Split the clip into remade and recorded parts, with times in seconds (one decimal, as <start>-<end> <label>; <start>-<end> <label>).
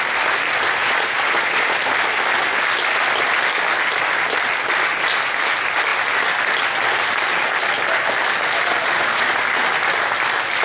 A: 0.0-0.8 recorded; 0.8-1.8 remade; 1.8-8.8 recorded; 8.8-9.4 remade; 9.4-10.6 recorded